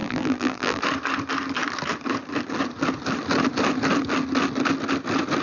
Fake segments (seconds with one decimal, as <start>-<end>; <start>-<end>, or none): 0.0-0.8